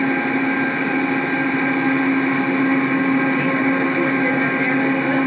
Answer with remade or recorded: recorded